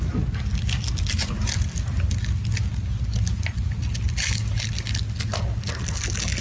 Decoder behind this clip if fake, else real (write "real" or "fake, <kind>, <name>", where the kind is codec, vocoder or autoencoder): real